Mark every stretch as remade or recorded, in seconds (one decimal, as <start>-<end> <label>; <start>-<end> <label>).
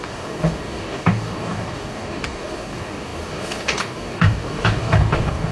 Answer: 0.0-5.5 remade